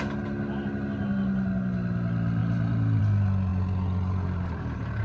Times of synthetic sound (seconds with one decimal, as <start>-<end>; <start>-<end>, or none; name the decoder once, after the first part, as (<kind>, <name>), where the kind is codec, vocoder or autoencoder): 2.4-3.0 (vocoder, BigVGAN v2); 3.5-5.0